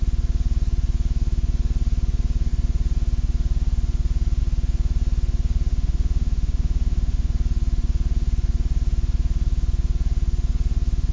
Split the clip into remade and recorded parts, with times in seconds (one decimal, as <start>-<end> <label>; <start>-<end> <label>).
0.0-5.7 recorded; 5.7-7.3 remade; 7.3-11.1 recorded